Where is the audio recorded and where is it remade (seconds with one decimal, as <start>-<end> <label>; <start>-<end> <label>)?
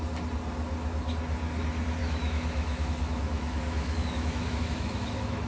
0.0-2.0 recorded; 2.0-5.5 remade